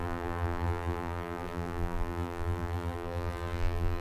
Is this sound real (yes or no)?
no